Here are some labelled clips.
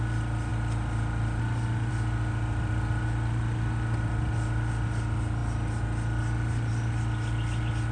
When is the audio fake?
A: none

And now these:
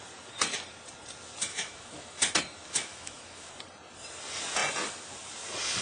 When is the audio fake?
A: 1.5-2.2 (autoencoder, DAC-VAE); 2.7-3.5

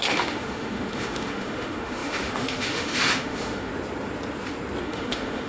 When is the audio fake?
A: 0.0-3.7 (autoencoder, DAC-VAE); 4.8-5.5

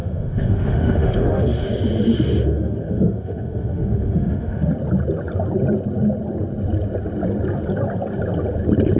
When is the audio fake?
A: 0.0-1.7 (autoencoder, DAC-VAE); 2.1-4.7